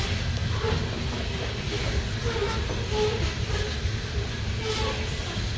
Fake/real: real